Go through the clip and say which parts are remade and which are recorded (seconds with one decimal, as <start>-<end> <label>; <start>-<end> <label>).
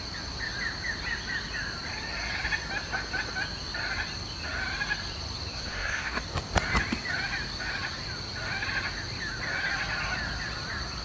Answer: 0.0-5.5 recorded; 5.5-6.2 remade; 6.2-11.0 recorded